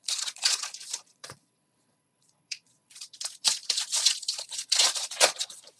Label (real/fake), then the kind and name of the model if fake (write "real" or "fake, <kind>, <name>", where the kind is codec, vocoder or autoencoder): fake, vocoder, Vocos